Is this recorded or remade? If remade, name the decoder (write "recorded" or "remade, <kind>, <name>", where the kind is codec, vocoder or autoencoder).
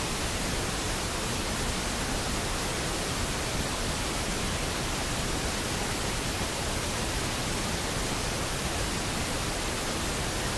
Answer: recorded